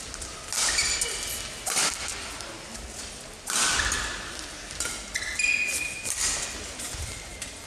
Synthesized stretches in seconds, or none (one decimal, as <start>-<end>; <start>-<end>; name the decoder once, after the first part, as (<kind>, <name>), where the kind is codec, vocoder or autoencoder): none